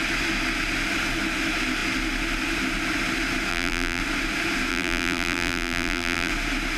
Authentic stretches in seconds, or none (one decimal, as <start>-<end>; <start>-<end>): 0.0-3.5; 4.0-4.7; 6.3-6.8